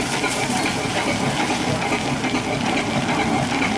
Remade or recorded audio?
recorded